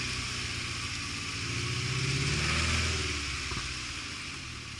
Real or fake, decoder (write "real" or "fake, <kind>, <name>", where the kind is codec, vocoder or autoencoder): real